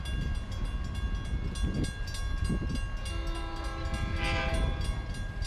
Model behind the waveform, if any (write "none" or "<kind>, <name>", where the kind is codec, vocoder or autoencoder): none